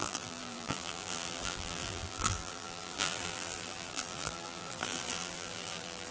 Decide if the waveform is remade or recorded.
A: remade